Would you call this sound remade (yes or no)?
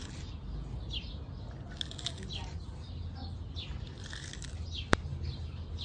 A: no